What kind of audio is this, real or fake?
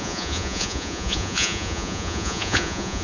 fake